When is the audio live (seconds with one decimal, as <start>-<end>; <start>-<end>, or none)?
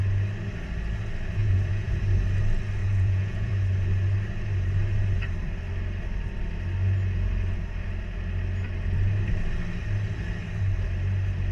0.0-1.4; 2.0-2.8; 3.5-11.5